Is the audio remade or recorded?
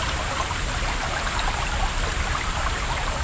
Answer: recorded